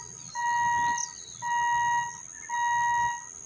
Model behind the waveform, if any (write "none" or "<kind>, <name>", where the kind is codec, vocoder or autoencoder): none